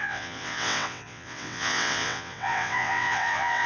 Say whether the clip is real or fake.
fake